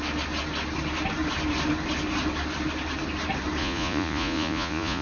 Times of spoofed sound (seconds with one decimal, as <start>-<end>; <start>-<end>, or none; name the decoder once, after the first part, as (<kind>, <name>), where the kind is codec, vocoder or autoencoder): 3.6-5.0 (vocoder, Vocos)